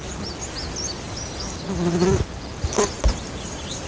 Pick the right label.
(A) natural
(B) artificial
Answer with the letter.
A